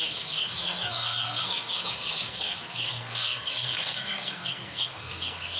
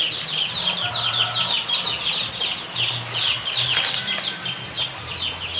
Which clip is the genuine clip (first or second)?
second